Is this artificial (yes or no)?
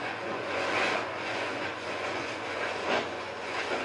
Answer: yes